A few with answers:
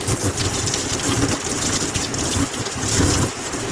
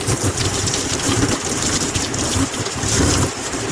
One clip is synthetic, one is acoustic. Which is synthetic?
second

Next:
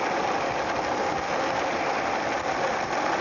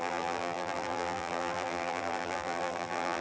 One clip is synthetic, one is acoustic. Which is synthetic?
second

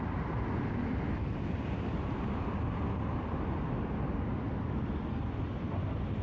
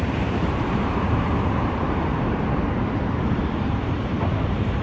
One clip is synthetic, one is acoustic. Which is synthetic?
second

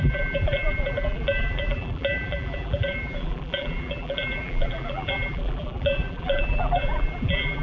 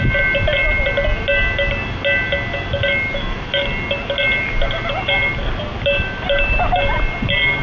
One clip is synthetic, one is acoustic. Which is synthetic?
first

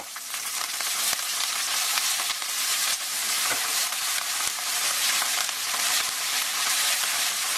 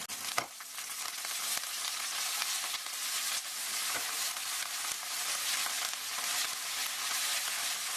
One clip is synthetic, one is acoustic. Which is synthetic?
first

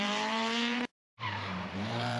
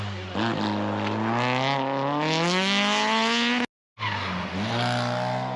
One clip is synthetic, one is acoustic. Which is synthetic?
first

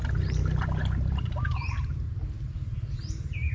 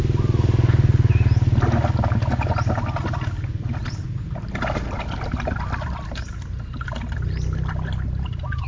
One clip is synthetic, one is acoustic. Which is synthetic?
first